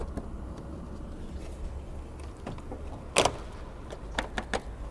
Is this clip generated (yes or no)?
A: no